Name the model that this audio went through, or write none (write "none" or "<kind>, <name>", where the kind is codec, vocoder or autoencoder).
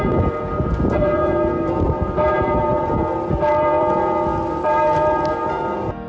vocoder, BigVGAN v2